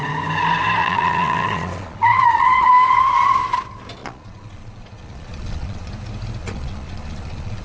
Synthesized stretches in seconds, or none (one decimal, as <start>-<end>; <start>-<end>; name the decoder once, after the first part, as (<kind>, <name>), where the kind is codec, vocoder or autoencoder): 0.8-2.7 (vocoder, Vocos); 4.0-5.9; 6.4-7.6